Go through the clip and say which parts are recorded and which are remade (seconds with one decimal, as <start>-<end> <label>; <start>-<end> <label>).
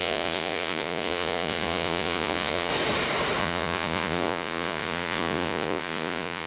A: 0.0-2.7 remade; 2.7-3.4 recorded; 3.4-6.5 remade